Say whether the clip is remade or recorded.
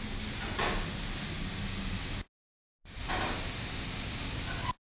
recorded